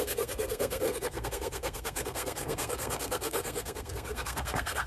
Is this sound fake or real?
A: fake